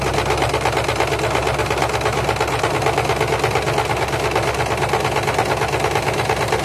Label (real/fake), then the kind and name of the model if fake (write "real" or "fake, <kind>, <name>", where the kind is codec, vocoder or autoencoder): real